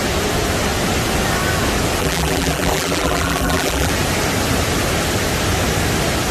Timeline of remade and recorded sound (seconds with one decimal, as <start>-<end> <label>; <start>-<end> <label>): 0.0-2.0 recorded; 2.0-3.9 remade; 3.9-6.3 recorded